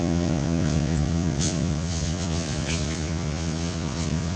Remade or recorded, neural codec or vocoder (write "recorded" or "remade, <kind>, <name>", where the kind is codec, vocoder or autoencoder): remade, vocoder, Vocos